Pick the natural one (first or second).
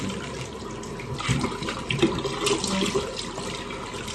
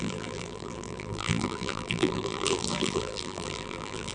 first